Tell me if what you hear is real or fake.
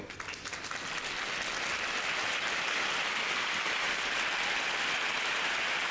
real